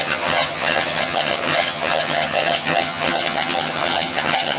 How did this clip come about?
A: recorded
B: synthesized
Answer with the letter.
B